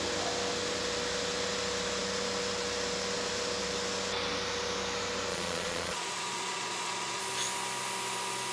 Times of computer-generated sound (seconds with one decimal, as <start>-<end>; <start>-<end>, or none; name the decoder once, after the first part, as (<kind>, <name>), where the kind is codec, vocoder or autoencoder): 5.3-7.2 (vocoder, Vocos)